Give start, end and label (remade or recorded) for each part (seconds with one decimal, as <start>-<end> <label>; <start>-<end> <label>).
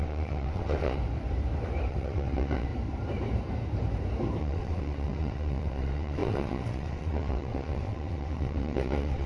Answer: 0.0-1.0 remade; 1.0-1.9 recorded; 1.9-2.7 remade; 2.7-4.4 recorded; 4.4-9.3 remade